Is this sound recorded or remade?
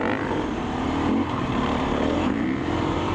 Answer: remade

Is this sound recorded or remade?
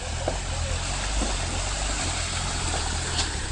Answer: recorded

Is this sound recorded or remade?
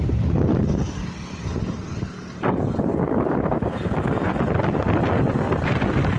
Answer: recorded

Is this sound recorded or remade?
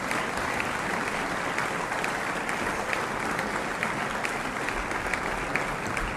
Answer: recorded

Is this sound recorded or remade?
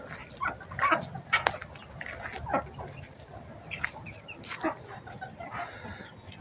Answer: recorded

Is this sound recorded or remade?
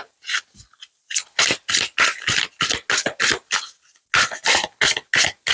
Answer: recorded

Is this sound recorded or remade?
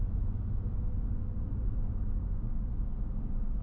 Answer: recorded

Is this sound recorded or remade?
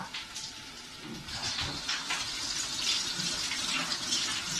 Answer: recorded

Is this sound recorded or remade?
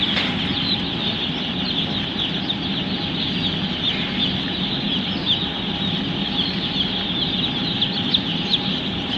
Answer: recorded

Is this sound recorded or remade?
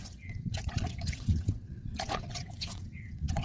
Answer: remade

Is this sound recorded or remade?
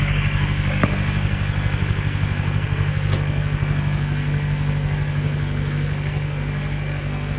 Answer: remade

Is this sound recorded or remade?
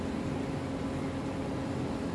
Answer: recorded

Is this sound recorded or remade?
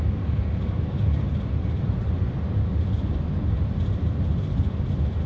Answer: recorded